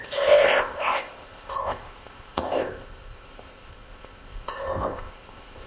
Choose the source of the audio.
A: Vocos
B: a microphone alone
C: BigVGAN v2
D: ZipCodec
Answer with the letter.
D